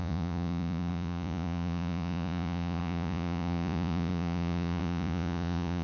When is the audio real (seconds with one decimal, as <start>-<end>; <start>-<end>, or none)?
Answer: none